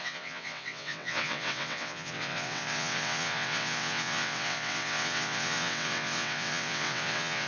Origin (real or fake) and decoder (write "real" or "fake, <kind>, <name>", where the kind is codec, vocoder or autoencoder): fake, vocoder, WaveNeXt